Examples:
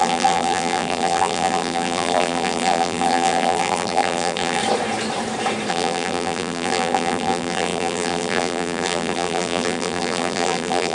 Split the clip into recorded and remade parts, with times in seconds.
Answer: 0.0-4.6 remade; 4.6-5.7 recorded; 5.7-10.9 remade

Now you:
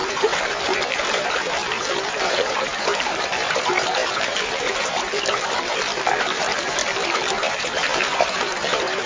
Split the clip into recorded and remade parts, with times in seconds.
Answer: 0.0-9.1 remade